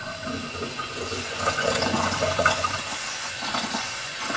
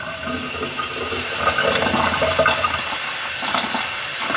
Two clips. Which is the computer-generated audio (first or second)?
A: first